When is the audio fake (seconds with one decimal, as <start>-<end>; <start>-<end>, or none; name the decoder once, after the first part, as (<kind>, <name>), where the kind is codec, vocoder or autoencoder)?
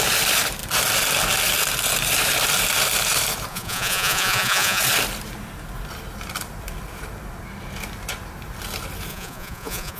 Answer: 3.5-4.8 (vocoder, Vocos); 9.1-10.0